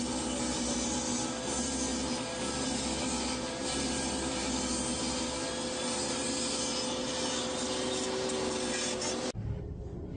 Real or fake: real